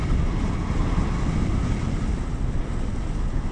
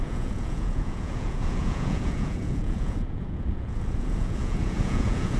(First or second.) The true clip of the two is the first